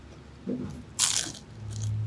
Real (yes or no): yes